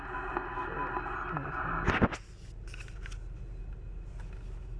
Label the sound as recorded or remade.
recorded